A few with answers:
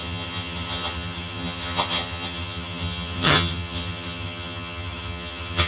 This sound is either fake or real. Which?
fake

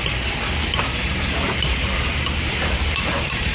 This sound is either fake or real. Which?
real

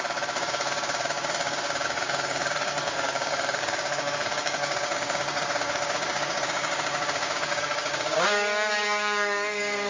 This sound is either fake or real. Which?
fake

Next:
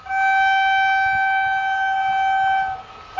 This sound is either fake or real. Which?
real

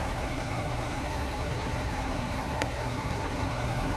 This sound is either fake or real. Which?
fake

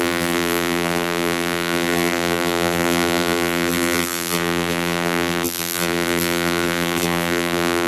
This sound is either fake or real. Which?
fake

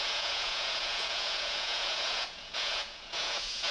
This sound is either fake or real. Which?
fake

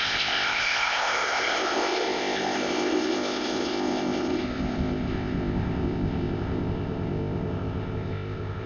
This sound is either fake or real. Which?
fake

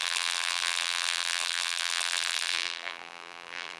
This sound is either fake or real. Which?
fake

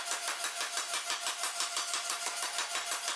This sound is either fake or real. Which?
real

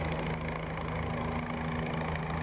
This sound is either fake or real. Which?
real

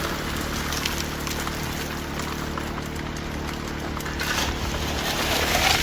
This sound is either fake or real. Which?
real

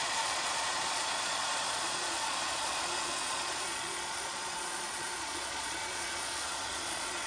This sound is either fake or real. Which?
fake